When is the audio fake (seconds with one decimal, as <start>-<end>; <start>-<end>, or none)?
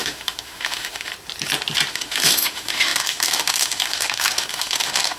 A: 0.0-1.1; 1.9-5.2